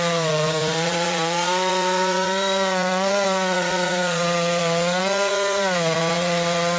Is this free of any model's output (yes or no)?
no